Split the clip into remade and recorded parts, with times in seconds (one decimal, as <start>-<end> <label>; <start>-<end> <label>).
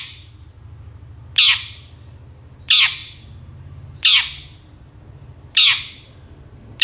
0.0-6.8 recorded